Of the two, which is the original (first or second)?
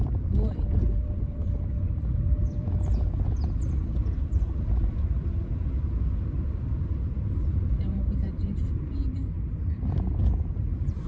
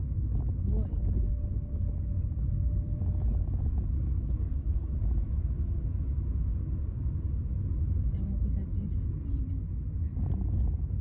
second